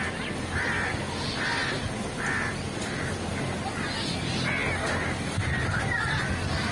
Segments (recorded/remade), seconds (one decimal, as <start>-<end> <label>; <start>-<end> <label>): 0.0-6.7 recorded